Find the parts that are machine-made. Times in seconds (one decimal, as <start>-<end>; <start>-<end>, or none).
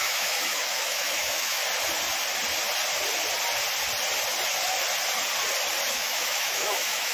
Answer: 0.0-1.6; 5.9-7.1